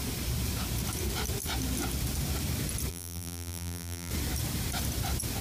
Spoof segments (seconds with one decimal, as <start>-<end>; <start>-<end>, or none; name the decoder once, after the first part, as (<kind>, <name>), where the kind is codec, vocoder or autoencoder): 2.9-4.1 (vocoder, BigVGAN v2)